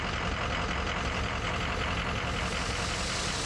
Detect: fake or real real